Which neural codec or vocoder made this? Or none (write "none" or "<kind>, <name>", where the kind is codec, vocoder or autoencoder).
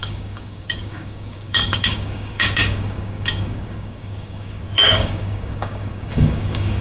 codec, DAC